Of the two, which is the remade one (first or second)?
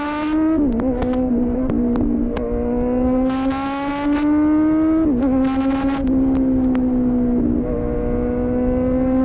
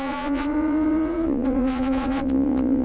second